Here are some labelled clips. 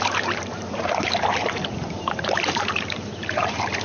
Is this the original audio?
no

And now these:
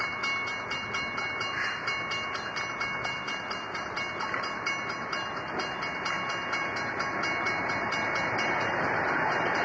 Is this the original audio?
yes